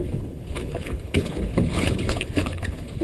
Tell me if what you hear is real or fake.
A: fake